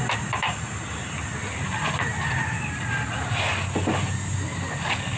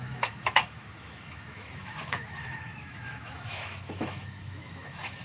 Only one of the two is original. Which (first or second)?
first